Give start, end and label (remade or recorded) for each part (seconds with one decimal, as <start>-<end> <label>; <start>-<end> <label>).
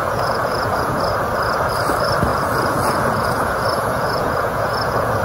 0.0-1.0 remade; 1.0-2.3 recorded; 2.3-5.2 remade